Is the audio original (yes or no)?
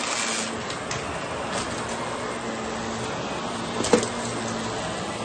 yes